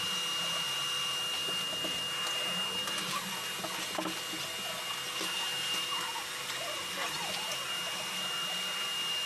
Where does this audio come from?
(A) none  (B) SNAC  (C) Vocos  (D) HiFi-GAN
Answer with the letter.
A